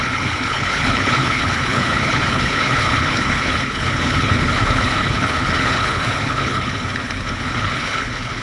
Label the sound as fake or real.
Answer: fake